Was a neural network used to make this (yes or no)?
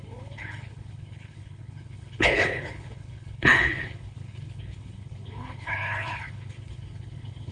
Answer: yes